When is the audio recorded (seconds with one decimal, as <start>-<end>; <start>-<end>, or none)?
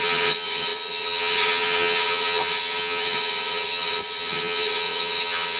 none